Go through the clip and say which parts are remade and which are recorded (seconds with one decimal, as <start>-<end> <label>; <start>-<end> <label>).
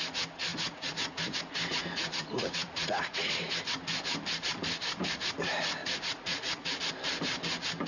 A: 0.0-0.5 recorded; 0.5-1.1 remade; 1.1-1.8 recorded; 1.8-3.4 remade; 3.4-5.8 recorded; 5.8-6.8 remade; 6.8-7.9 recorded